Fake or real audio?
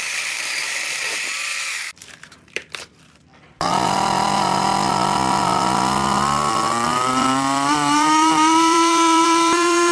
fake